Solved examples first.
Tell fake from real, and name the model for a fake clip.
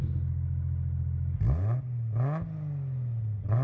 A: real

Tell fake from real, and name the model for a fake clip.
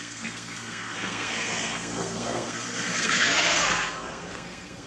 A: fake, codec, SNAC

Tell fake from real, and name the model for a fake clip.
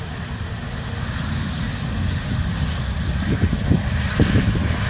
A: real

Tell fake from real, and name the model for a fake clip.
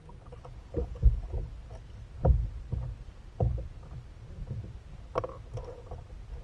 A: real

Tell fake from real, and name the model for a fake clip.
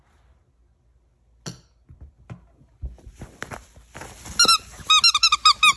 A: real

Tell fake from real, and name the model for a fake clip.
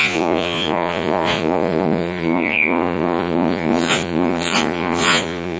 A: fake, vocoder, Vocos